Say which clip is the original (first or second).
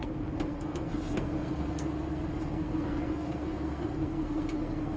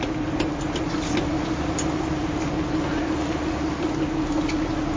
second